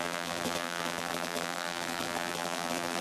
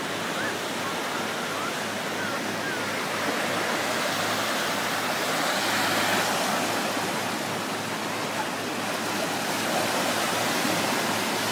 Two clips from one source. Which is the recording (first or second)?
second